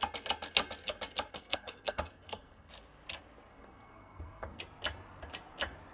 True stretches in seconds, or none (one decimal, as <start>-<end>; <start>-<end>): 0.0-1.3; 2.7-3.5; 4.6-5.9